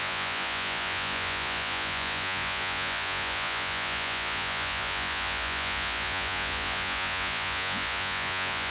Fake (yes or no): yes